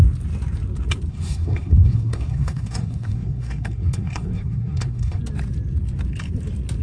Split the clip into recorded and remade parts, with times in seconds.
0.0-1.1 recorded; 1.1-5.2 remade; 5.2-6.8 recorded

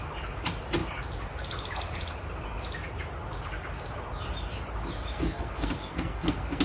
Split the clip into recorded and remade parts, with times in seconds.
0.0-5.1 recorded; 5.1-6.6 remade